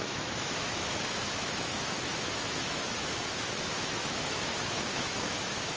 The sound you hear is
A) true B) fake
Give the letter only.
B